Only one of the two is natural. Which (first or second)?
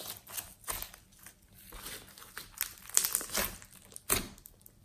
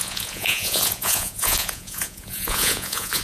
first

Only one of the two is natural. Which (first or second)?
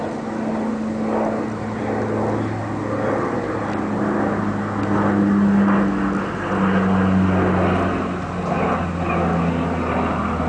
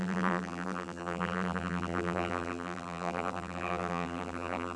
first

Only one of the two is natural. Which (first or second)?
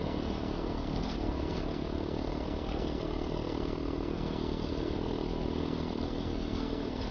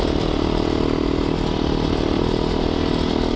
second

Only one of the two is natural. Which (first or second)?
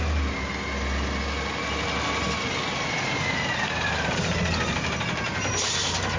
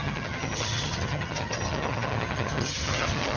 first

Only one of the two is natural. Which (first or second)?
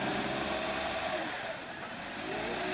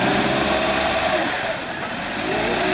first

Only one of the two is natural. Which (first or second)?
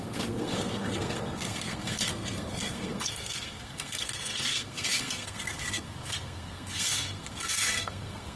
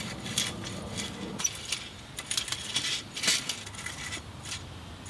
second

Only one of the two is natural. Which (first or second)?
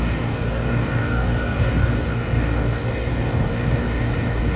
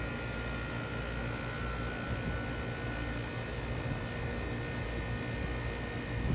second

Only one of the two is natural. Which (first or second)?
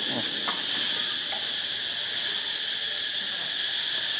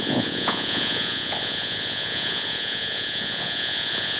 first